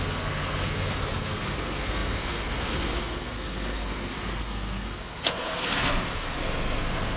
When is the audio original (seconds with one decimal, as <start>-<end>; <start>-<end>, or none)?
none